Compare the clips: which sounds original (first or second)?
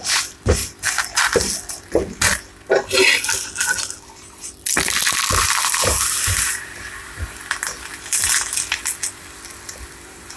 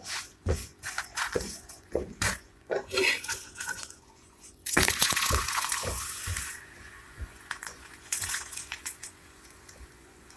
first